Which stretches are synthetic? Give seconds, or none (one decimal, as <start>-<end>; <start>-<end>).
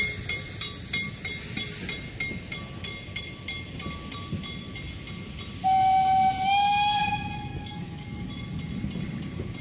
7.5-8.3